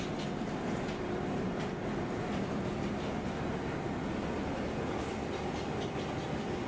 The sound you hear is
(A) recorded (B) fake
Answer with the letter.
A